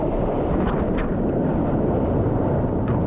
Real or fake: real